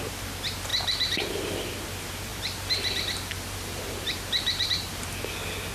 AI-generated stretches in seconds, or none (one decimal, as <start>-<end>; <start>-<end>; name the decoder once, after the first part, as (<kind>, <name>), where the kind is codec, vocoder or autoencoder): 0.7-1.3 (vocoder, BigVGAN v2); 2.3-5.1